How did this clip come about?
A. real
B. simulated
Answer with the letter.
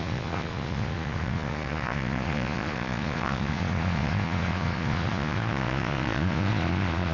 B